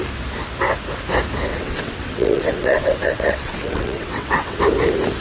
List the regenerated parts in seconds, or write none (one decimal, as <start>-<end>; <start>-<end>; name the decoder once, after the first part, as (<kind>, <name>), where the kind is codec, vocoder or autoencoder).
1.5-4.6 (vocoder, WaveNeXt)